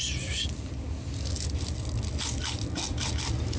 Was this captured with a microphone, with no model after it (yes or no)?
yes